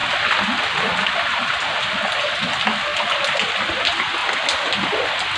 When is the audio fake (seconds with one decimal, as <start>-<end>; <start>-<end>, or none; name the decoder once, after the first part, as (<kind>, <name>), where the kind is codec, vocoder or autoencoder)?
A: 1.1-2.9 (vocoder, BigVGAN v2); 3.5-4.2